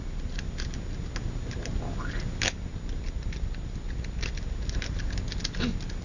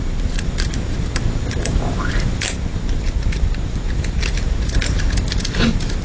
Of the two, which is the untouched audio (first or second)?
first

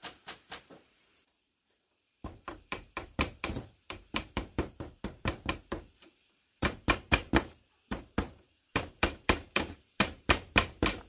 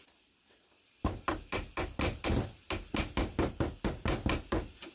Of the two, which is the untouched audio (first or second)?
second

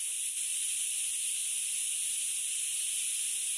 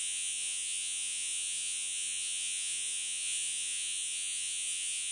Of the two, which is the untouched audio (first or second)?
first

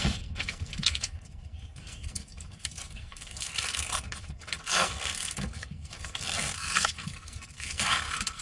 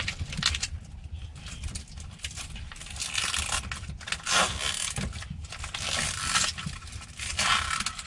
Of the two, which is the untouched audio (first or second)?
second